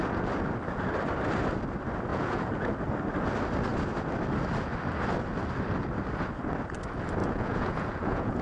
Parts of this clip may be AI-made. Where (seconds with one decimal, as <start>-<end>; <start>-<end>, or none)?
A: 2.1-2.7; 7.2-8.4